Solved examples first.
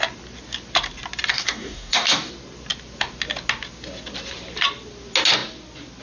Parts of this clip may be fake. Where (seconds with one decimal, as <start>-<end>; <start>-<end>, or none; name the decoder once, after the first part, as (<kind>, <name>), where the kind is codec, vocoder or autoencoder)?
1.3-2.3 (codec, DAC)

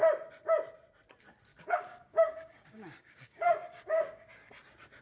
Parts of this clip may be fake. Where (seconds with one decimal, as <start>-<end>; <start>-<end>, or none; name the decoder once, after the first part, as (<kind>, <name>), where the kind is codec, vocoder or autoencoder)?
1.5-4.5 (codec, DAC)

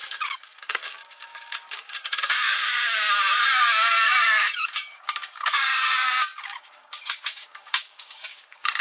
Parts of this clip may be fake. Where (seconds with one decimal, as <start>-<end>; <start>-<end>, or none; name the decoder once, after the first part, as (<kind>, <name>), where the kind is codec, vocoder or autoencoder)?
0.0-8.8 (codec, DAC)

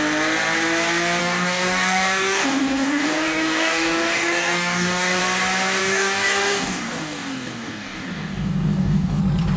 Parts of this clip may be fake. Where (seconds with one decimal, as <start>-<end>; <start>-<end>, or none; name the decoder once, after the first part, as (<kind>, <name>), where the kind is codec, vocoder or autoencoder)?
1.2-5.2 (codec, DAC); 5.8-9.2

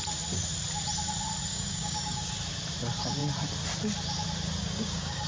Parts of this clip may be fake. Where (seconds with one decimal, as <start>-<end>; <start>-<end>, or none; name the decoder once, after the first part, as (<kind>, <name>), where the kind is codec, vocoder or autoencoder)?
1.5-2.3 (codec, DAC); 4.6-5.3

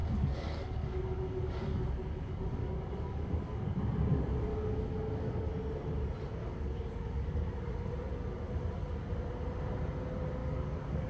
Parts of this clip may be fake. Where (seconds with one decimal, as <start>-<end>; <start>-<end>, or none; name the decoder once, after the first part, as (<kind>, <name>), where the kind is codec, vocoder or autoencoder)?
0.0-3.8 (codec, DAC); 4.5-5.5; 6.4-7.7; 10.4-11.1

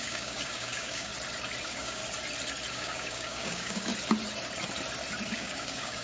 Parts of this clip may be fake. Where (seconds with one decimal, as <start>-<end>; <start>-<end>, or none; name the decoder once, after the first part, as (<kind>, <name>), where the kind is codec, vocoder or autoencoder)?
0.0-1.1 (codec, DAC); 1.6-2.0; 2.7-3.9; 5.3-6.0

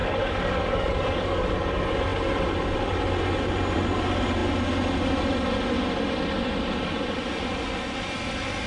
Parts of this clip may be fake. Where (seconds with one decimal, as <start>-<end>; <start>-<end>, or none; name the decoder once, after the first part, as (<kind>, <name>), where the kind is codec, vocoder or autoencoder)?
0.0-1.5 (codec, DAC)